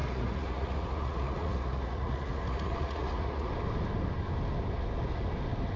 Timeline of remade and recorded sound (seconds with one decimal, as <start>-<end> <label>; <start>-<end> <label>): 0.0-3.5 remade; 3.5-5.8 recorded